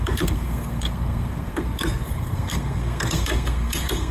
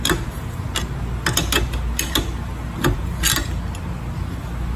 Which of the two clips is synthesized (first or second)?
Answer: first